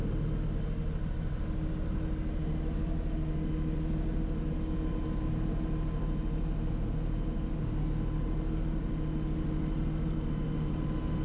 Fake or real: real